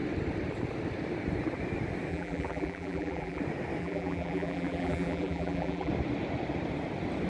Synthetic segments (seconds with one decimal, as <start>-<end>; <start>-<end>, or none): 2.1-3.4; 3.8-5.9